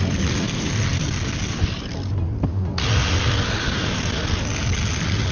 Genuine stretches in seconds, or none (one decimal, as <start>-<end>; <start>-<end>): 0.0-5.3

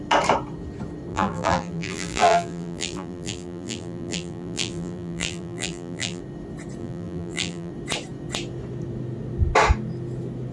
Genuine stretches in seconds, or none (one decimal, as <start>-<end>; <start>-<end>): 0.0-1.1; 6.2-6.8; 7.7-10.5

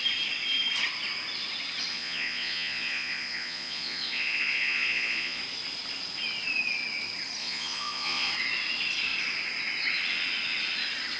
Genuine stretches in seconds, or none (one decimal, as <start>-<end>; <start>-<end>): 0.0-1.9; 5.4-7.4; 8.3-11.2

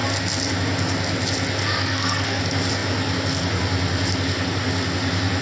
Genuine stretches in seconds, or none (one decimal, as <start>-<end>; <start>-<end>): 0.0-1.8; 2.4-5.4

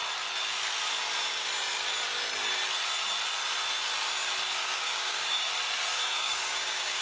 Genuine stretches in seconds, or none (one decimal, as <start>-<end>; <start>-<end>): 0.0-4.6; 5.5-5.9

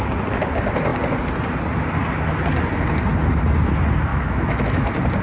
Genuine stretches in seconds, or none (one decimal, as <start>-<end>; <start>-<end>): 0.0-4.1; 4.8-5.2

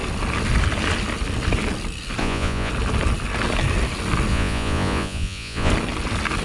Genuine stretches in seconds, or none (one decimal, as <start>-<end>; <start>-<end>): 0.0-2.2; 2.7-4.3; 5.7-6.4

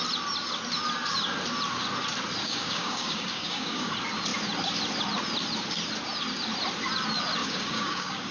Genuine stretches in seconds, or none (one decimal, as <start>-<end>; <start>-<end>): 0.0-2.4; 3.9-7.4